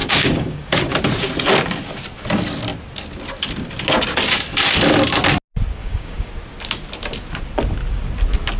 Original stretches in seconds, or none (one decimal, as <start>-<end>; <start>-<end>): 0.9-5.8; 6.3-8.6